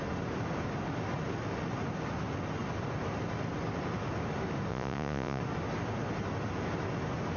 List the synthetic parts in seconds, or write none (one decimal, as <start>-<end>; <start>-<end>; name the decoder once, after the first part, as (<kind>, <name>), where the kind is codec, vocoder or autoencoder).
4.7-5.4 (vocoder, Vocos)

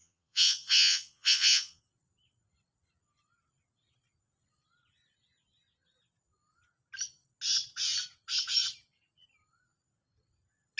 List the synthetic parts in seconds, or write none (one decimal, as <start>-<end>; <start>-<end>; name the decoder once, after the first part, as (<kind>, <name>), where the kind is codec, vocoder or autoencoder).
0.0-1.8 (vocoder, Vocos)